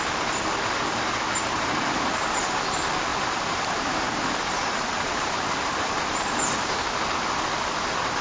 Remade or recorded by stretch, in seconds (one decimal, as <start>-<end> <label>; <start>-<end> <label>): 0.0-3.1 recorded; 3.1-6.9 remade; 6.9-8.2 recorded